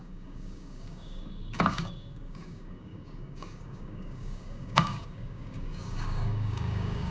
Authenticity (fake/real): fake